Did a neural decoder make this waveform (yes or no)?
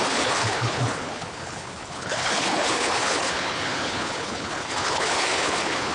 yes